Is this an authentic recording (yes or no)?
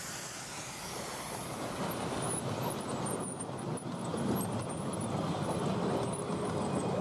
yes